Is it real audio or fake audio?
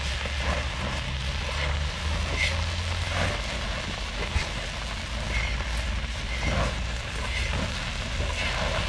real